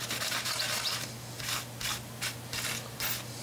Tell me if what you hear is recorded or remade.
recorded